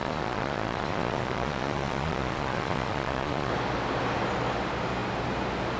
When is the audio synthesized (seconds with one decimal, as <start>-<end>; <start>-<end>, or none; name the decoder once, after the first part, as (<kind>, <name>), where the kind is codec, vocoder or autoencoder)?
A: 0.0-3.5 (vocoder, Vocos)